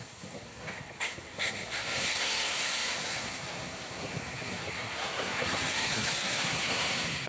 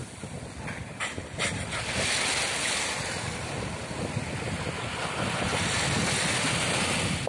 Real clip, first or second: second